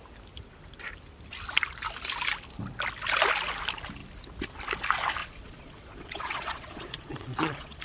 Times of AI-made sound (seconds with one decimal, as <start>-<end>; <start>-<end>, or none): 5.2-7.8